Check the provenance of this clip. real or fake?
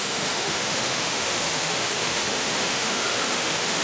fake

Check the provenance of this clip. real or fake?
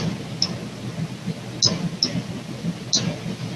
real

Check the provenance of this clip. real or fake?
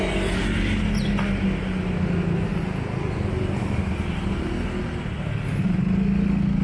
real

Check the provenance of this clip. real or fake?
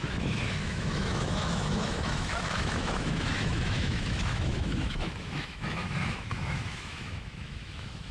fake